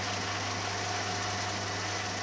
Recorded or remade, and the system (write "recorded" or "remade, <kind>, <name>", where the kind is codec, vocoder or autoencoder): recorded